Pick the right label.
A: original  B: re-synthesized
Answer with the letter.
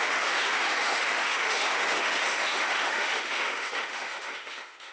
B